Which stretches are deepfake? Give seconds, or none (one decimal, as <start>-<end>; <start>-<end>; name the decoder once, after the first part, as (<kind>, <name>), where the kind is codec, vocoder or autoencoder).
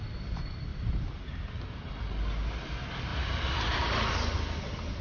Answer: 0.7-2.0 (vocoder, BigVGAN v2); 3.1-4.0